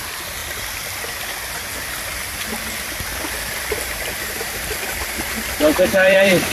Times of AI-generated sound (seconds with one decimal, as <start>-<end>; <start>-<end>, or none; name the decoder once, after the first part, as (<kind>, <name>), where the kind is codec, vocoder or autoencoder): 0.0-6.5 (vocoder, BigVGAN v2)